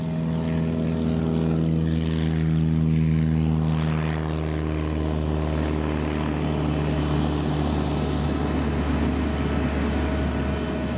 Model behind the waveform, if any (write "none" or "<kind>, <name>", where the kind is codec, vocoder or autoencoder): none